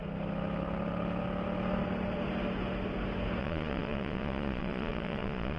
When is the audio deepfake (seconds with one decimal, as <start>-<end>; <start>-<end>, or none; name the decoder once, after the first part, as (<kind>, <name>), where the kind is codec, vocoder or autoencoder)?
3.4-5.6 (vocoder, Vocos)